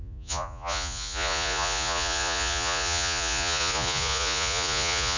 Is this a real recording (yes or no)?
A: no